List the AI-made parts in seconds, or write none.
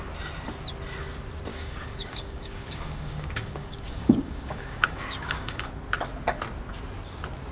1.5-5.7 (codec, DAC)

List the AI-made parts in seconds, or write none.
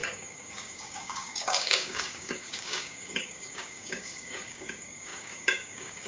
0.0-6.1 (codec, DAC)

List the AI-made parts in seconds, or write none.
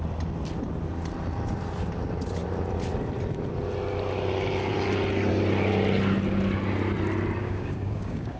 7.4-8.4 (codec, DAC)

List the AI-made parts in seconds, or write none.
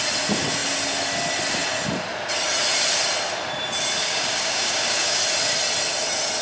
4.0-5.2 (codec, DAC)